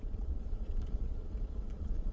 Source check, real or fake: fake